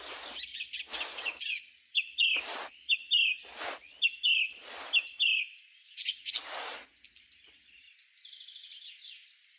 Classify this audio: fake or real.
real